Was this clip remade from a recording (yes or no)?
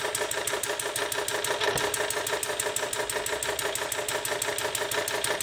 no